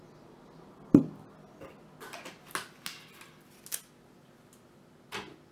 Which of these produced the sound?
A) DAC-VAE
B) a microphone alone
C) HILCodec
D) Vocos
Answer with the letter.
B